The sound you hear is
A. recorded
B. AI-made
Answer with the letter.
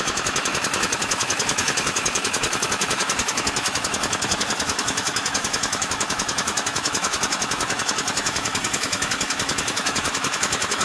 B